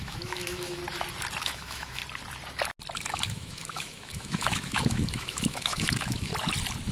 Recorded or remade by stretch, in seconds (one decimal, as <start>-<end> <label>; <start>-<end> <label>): 0.0-0.8 remade; 0.8-1.4 recorded; 1.4-2.0 remade; 2.0-3.1 recorded; 3.1-6.3 remade; 6.3-6.9 recorded